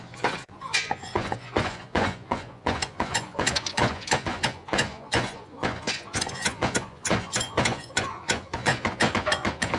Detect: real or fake fake